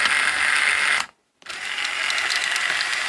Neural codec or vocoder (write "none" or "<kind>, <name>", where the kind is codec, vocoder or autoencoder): none